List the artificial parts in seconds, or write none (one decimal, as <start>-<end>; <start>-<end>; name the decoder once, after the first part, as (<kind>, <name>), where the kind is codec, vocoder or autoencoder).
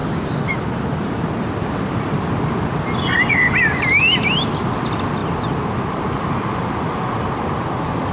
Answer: none